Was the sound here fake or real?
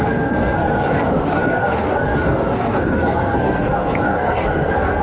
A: fake